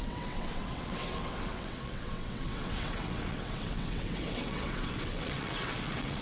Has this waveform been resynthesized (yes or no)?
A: yes